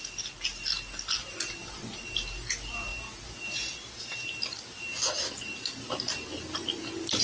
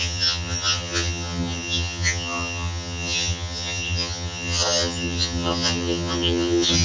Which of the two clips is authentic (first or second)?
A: first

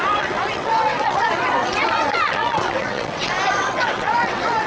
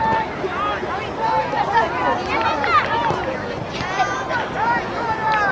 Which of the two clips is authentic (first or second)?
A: second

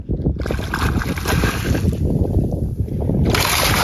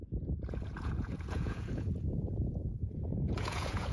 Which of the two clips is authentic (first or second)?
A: first